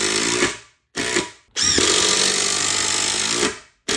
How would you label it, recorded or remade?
recorded